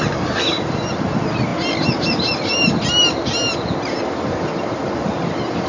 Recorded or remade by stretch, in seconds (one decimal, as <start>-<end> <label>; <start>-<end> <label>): 0.0-5.7 recorded